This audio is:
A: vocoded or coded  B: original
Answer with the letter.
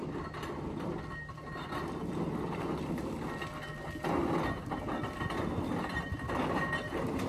B